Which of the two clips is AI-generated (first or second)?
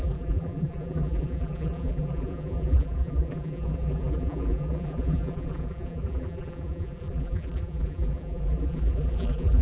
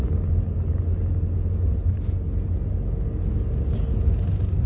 first